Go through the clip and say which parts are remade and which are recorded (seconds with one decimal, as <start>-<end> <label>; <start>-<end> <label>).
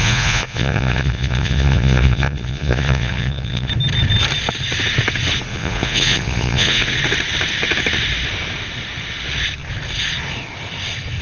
0.0-3.7 remade; 3.7-5.5 recorded; 5.5-6.9 remade; 6.9-11.2 recorded